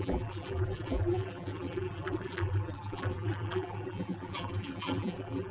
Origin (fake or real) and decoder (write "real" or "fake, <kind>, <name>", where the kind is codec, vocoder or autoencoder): fake, vocoder, BigVGAN v2